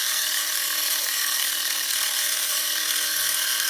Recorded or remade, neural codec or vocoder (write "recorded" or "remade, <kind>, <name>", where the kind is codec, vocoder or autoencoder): remade, codec, SNAC